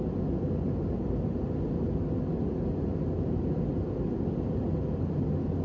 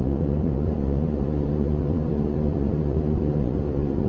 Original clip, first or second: first